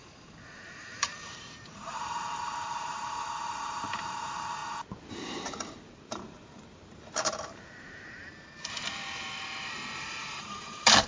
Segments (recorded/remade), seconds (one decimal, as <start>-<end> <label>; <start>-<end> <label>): 0.0-4.6 remade; 4.6-5.1 recorded; 5.1-11.1 remade

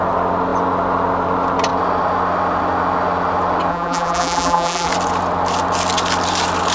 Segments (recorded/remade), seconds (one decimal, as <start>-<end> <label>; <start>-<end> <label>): 0.0-3.7 recorded; 3.7-4.9 remade; 4.9-6.7 recorded

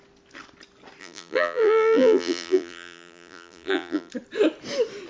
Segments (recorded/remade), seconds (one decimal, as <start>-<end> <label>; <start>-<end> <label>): 0.0-1.0 recorded; 1.0-4.1 remade; 4.1-5.1 recorded

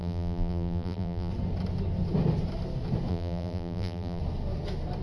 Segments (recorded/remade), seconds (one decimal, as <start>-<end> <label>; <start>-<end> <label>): 0.0-1.3 remade; 1.3-3.1 recorded; 3.1-4.2 remade; 4.2-5.0 recorded

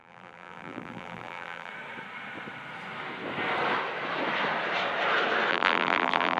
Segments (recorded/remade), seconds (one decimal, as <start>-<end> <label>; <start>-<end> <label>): 0.0-1.7 remade; 1.7-5.5 recorded; 5.5-6.4 remade

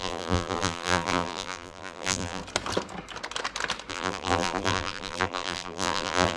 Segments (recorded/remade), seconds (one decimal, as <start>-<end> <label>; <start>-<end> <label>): 0.0-2.4 remade; 2.4-3.9 recorded; 3.9-6.4 remade

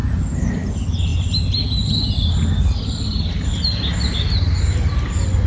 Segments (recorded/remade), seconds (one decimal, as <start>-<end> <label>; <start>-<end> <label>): 0.0-3.9 recorded; 3.9-4.5 remade; 4.5-5.5 recorded